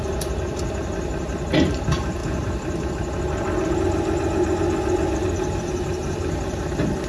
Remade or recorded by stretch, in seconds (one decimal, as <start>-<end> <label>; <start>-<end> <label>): 0.0-2.2 recorded; 2.2-2.9 remade; 2.9-7.1 recorded